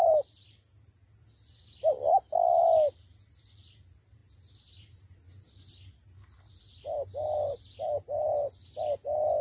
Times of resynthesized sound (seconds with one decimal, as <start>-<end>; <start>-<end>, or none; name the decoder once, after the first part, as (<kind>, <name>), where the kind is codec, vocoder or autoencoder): none

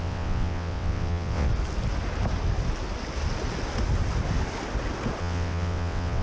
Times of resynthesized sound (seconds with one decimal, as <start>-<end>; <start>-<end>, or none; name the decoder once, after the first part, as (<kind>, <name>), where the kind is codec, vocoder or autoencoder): 0.0-1.5 (vocoder, WaveNeXt); 5.2-6.2

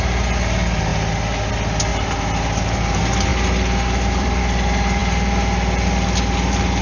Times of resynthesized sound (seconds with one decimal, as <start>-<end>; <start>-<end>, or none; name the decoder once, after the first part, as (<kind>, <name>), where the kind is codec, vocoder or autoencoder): 1.9-2.9 (vocoder, BigVGAN v2); 3.3-4.4